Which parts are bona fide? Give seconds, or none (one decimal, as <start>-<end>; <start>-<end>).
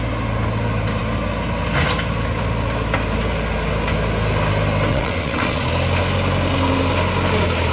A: 0.0-4.9; 5.6-7.7